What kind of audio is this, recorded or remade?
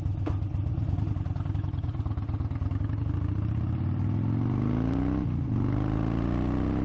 recorded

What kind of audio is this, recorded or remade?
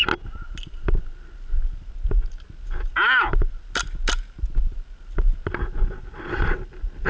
recorded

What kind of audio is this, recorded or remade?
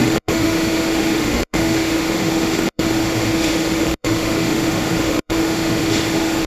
remade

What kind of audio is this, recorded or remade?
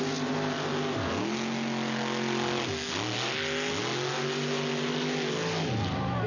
recorded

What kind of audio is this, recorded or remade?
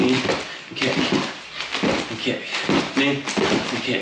recorded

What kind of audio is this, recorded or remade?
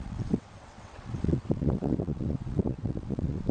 remade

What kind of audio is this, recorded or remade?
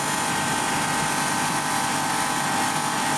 recorded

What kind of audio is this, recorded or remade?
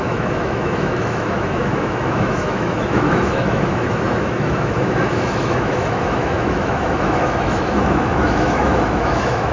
remade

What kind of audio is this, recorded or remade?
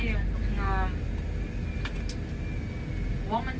recorded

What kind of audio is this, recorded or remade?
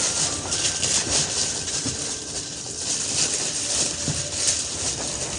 recorded